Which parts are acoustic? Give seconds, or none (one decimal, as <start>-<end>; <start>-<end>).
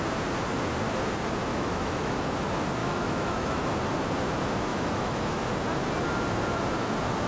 0.0-1.5; 2.2-2.8; 3.6-4.7; 5.4-7.3